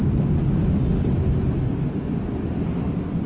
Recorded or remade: recorded